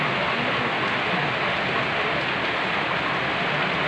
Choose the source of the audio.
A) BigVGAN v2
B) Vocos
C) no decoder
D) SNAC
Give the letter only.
C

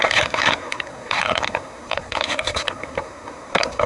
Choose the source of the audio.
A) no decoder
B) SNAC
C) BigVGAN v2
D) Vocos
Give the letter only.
B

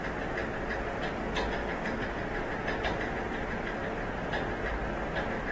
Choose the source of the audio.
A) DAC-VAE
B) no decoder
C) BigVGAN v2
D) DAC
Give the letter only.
B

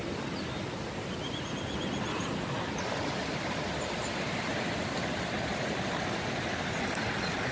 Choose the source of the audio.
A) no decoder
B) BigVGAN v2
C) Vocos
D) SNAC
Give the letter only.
A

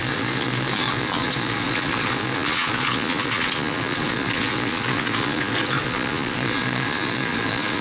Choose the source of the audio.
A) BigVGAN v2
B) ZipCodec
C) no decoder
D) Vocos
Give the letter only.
D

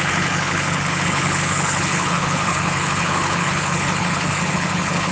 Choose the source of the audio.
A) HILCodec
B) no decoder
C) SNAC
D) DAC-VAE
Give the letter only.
A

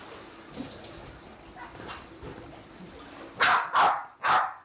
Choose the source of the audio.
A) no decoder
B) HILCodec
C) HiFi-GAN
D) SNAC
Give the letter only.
A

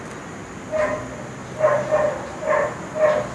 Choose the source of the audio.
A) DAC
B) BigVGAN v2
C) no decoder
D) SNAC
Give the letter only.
C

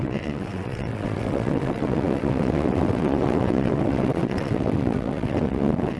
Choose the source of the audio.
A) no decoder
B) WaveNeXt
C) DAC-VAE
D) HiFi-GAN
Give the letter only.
B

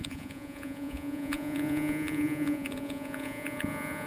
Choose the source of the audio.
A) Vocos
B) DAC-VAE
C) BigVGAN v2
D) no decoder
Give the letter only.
A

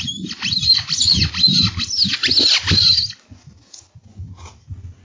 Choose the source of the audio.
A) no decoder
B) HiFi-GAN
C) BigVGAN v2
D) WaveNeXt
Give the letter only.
A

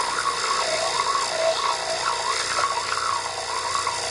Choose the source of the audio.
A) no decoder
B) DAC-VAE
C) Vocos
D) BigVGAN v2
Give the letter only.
A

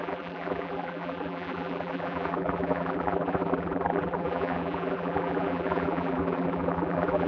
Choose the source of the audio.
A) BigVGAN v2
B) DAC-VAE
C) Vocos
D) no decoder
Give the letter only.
A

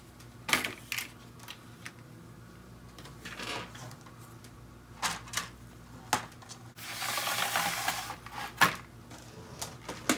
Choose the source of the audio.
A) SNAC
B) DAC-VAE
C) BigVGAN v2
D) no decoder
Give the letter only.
D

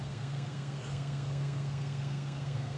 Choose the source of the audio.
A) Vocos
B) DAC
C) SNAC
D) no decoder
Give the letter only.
C